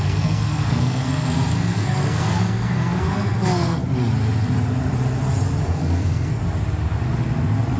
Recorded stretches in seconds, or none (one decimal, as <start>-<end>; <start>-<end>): 3.8-5.6; 6.4-7.8